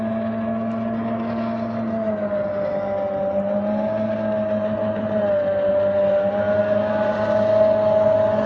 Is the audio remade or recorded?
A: recorded